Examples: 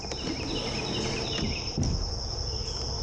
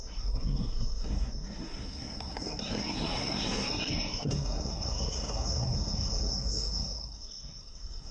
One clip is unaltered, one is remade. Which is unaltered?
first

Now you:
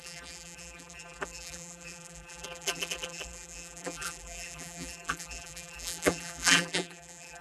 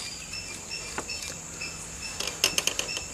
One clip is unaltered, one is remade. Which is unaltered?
second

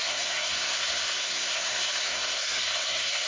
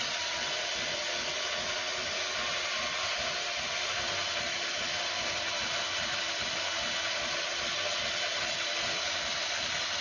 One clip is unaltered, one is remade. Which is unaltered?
second